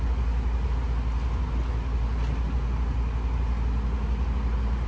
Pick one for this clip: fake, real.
real